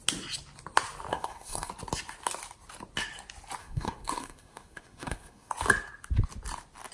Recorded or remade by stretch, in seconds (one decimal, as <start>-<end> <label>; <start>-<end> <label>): 0.0-1.1 recorded; 1.1-1.7 remade; 1.7-3.6 recorded; 3.6-5.5 remade; 5.5-6.9 recorded